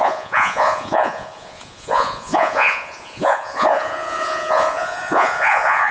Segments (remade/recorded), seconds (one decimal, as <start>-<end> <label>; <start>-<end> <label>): 0.0-5.9 remade